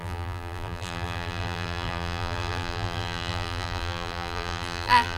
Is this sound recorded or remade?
remade